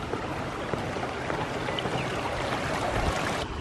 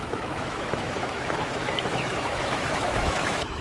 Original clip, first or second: first